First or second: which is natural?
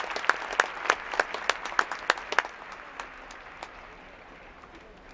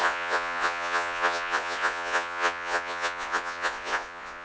first